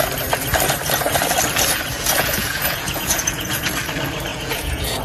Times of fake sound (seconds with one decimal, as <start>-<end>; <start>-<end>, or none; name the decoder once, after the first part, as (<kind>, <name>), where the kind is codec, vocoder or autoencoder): 1.9-3.7 (vocoder, Vocos); 4.3-5.0